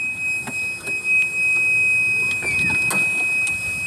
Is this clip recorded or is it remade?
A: recorded